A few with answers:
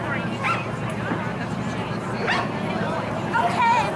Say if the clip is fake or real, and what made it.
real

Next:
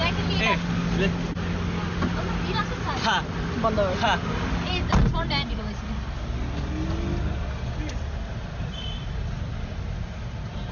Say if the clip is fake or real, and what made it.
real